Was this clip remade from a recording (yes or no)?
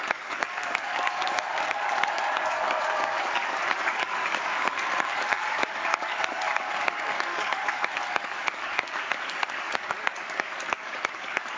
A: yes